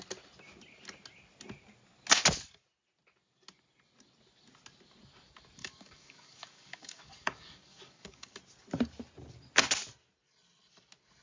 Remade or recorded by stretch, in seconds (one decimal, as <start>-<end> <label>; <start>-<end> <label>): 0.0-5.6 recorded; 5.6-8.4 remade; 8.4-11.2 recorded